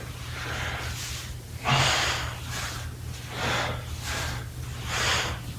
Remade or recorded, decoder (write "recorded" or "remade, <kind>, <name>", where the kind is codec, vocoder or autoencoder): recorded